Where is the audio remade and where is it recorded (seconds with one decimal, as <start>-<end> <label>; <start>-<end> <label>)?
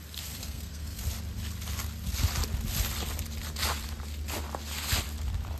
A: 0.0-0.4 recorded; 0.4-1.0 remade; 1.0-5.6 recorded